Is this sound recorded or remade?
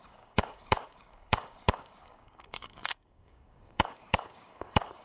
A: remade